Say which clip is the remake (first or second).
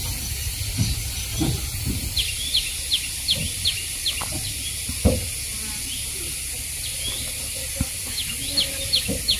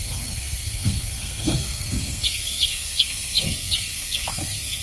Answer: second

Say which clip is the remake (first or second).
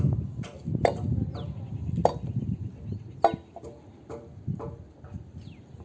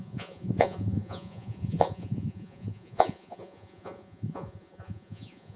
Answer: second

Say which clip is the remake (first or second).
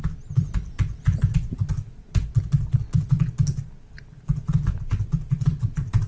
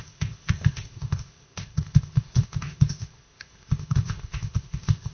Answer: second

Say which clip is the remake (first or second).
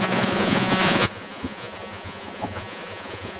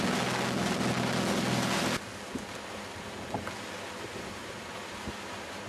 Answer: first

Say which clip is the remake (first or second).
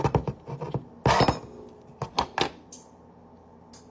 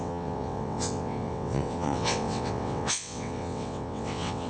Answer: second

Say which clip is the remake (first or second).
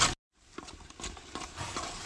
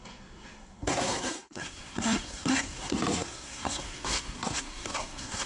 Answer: second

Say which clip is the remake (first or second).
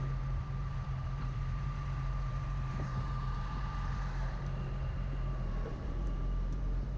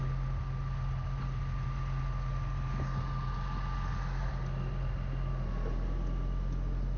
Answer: first